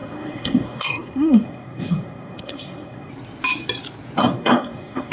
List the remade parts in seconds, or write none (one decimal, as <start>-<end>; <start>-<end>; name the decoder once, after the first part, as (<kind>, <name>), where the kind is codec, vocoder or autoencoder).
0.0-3.1 (codec, SNAC); 4.2-5.1